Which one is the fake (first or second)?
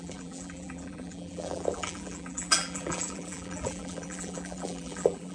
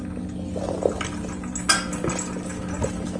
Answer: first